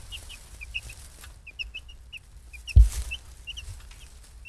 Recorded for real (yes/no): yes